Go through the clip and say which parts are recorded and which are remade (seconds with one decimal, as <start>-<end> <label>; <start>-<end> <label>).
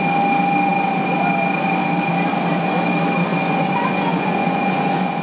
0.0-3.3 recorded; 3.3-5.2 remade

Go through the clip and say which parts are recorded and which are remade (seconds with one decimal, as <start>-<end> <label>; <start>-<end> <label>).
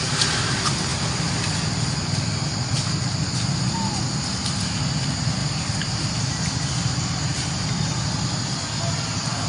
0.0-5.4 recorded; 5.4-6.2 remade; 6.2-7.3 recorded; 7.3-9.5 remade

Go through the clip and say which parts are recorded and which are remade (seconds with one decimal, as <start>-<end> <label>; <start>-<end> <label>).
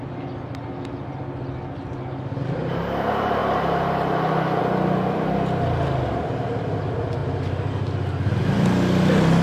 0.0-9.4 recorded